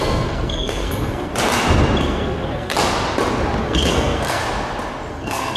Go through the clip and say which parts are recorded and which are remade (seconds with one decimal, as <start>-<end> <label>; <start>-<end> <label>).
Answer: 0.0-1.3 remade; 1.3-2.0 recorded; 2.0-2.7 remade; 2.7-3.6 recorded; 3.6-4.4 remade; 4.4-5.1 recorded; 5.1-5.6 remade